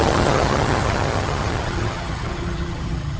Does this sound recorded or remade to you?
remade